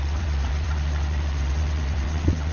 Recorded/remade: remade